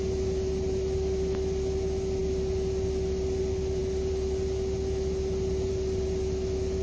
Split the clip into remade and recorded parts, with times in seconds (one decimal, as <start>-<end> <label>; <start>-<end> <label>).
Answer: 0.0-6.8 recorded